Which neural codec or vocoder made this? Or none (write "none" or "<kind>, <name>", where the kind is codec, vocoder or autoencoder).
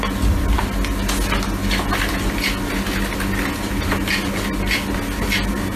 none